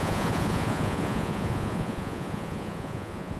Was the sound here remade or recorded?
remade